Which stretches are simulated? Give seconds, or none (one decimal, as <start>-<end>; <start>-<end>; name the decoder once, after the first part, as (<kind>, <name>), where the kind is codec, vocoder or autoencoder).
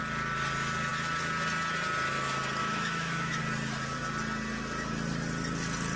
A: 2.6-3.4 (autoencoder, DAC-VAE)